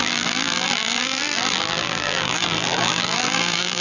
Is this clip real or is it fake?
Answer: fake